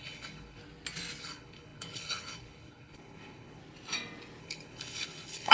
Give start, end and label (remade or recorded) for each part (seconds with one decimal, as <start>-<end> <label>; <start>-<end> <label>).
0.0-0.6 remade; 0.6-1.2 recorded; 1.2-3.6 remade; 3.6-4.4 recorded; 4.4-5.5 remade